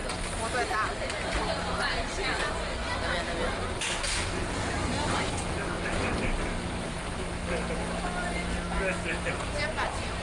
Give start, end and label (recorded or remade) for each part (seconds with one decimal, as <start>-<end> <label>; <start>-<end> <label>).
0.0-10.2 recorded

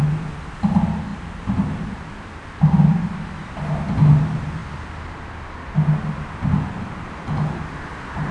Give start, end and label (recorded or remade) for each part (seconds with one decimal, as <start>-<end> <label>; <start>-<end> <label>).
0.0-8.3 recorded

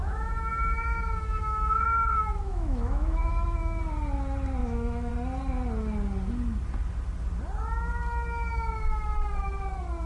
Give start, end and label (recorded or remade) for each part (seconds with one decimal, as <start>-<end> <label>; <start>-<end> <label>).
0.0-3.8 remade; 3.8-4.6 recorded; 4.6-5.1 remade; 5.1-10.1 recorded